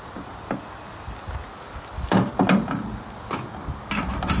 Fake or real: real